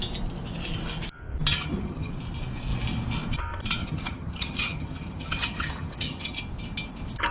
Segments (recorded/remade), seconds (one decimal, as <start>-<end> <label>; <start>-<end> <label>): 0.0-1.5 recorded; 1.5-2.1 remade; 2.1-3.8 recorded; 3.8-6.4 remade; 6.4-7.3 recorded